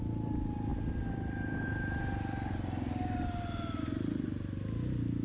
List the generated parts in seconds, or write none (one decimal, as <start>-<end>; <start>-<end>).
none